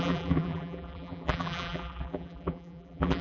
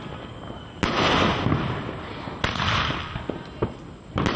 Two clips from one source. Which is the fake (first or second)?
first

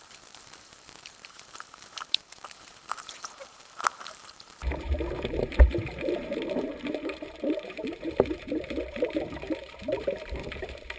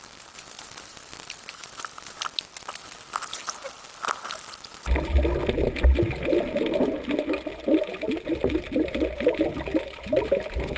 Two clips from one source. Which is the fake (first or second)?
first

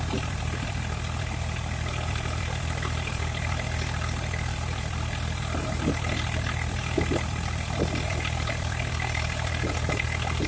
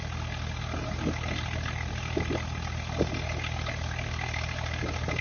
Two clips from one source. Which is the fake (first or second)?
first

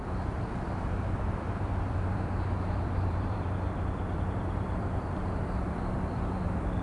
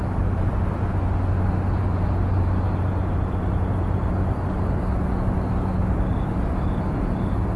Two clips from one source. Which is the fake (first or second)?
first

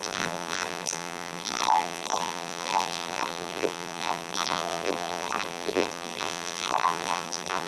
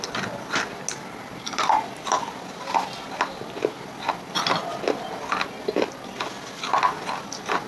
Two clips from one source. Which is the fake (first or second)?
first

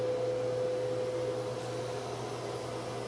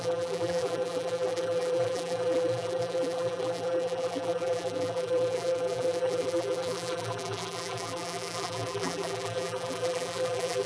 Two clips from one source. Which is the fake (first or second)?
second